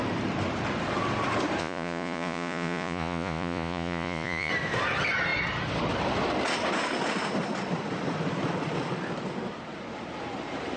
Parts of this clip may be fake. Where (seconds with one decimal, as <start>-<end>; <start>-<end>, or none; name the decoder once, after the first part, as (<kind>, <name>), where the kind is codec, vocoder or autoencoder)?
1.6-4.5 (vocoder, Vocos)

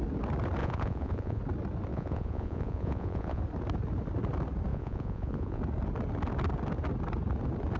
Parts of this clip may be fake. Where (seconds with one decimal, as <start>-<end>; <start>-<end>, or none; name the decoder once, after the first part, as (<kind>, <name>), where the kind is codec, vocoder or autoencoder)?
0.6-1.4 (vocoder, Vocos); 1.9-3.4; 4.7-5.6

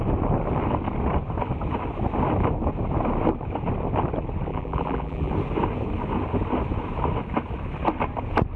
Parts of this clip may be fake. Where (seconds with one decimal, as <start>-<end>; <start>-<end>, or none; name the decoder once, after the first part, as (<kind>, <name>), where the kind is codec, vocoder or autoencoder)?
4.5-5.3 (vocoder, BigVGAN v2)

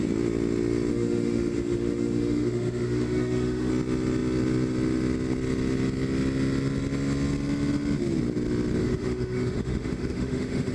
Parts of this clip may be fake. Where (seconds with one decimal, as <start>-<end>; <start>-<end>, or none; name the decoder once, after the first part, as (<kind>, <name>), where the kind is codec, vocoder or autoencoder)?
0.9-3.7 (autoencoder, DAC-VAE); 8.8-10.7

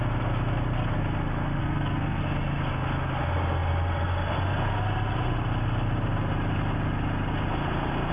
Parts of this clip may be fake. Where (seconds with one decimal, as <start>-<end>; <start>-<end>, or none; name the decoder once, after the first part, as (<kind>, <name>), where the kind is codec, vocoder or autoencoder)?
1.6-2.2 (codec, SNAC)

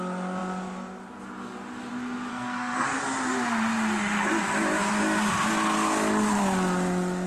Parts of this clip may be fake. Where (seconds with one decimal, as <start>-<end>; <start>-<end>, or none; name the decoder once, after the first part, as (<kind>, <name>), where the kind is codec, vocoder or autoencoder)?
2.3-3.0 (codec, SNAC)

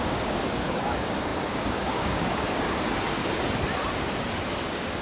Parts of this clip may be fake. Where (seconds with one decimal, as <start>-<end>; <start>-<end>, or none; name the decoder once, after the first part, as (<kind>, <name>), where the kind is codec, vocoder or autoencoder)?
0.0-3.2 (codec, DAC); 4.5-5.0

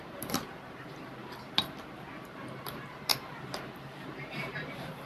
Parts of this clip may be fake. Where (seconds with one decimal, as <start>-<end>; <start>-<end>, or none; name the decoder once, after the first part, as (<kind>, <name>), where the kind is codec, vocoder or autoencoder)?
0.0-1.2 (vocoder, BigVGAN v2); 2.0-5.1